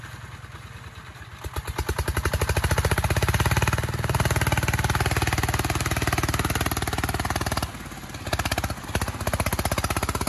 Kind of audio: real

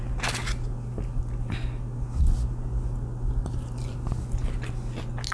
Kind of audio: real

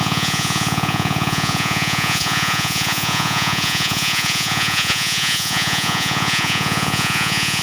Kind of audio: fake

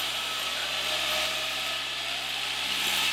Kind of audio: fake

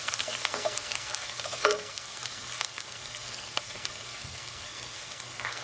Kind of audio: fake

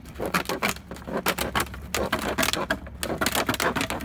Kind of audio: real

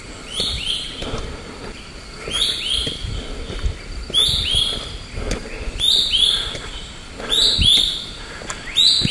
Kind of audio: real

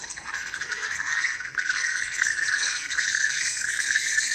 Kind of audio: fake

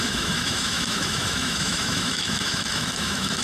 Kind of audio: fake